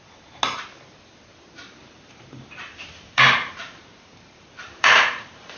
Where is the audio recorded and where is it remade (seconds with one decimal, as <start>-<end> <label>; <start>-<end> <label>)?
0.0-1.8 recorded; 1.8-5.6 remade